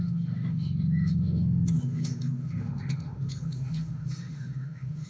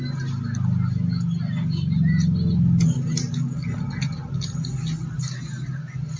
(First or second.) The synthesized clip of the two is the first